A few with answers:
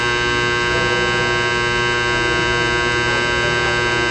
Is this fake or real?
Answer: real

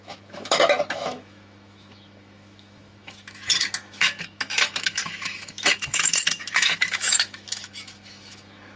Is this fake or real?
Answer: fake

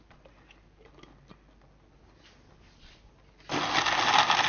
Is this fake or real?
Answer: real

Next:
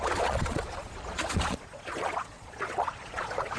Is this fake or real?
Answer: fake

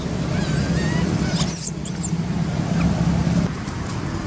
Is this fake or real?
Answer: real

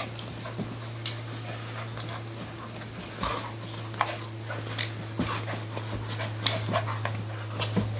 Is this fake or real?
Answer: real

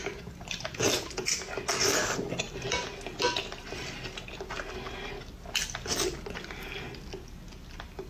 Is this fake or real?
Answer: real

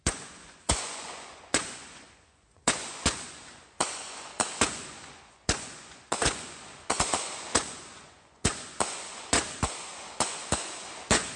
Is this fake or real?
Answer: fake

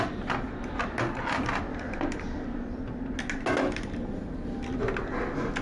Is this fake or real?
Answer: real